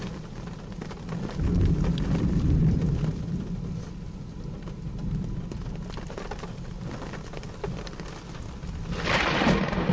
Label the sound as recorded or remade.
recorded